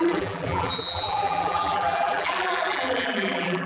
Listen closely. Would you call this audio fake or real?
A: fake